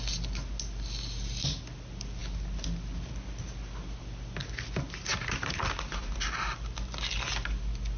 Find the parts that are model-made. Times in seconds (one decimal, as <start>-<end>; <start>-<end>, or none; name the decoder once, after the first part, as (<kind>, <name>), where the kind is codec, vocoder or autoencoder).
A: none